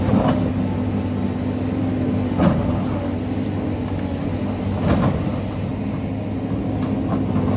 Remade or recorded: recorded